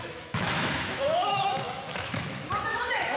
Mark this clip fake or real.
fake